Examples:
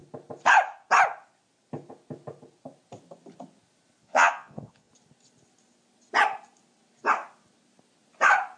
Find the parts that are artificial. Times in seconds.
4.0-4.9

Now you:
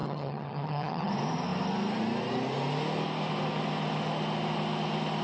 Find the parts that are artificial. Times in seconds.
0.0-1.1

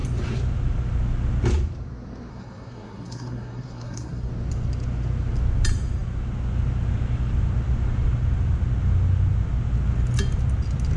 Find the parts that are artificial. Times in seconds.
2.3-4.3

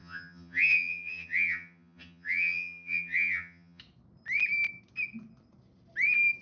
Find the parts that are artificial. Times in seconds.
0.0-3.8

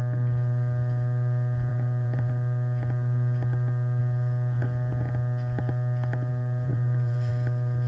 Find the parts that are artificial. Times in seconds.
1.7-2.3; 6.3-7.3

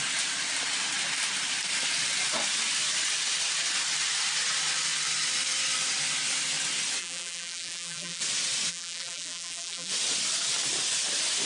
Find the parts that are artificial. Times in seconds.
7.0-8.2; 8.7-9.9

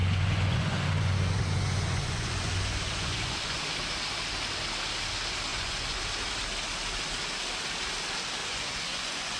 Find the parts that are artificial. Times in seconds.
0.0-3.6; 5.5-6.0; 8.4-9.4